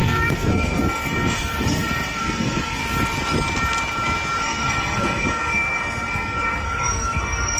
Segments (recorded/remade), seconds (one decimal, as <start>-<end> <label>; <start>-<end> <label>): 0.0-2.8 remade; 2.8-4.4 recorded; 4.4-7.6 remade